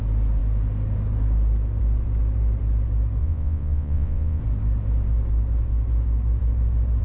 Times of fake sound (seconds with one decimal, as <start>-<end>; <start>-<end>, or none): 3.2-4.4